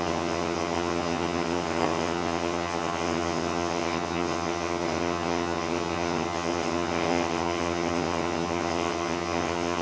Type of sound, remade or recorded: remade